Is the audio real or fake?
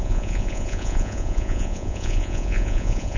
fake